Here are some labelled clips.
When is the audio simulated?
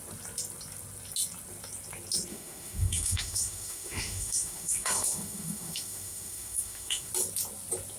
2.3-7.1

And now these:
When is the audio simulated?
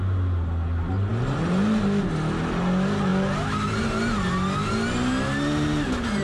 none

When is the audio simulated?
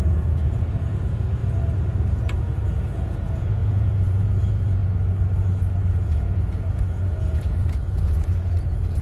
0.0-1.4; 2.1-4.8; 5.9-9.0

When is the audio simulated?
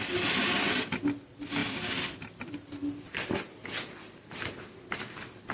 none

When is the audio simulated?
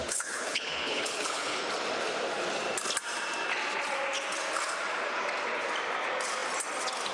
0.0-1.6